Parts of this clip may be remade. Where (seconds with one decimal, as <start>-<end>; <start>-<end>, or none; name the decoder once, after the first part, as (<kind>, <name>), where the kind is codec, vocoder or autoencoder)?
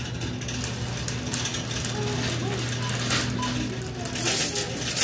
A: none